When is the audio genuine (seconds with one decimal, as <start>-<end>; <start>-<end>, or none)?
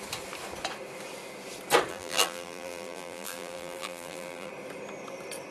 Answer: 0.0-1.9; 4.5-5.5